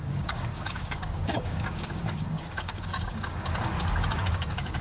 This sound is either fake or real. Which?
fake